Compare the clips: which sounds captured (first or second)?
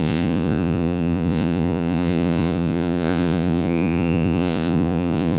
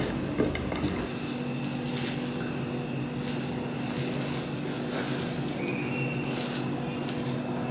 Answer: second